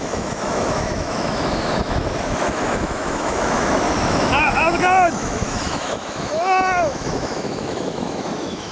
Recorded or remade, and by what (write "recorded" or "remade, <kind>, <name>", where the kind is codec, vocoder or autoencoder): remade, autoencoder, DAC-VAE